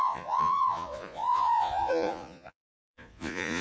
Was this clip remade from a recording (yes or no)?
yes